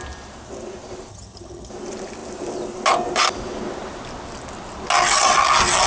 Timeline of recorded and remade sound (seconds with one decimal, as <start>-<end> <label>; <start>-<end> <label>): 0.0-1.1 recorded; 1.1-1.7 remade; 1.7-5.9 recorded